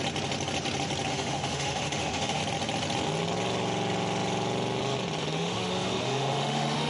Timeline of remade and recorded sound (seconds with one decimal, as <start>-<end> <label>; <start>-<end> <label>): 0.0-1.1 recorded; 1.1-2.4 remade; 2.4-5.2 recorded; 5.2-6.9 remade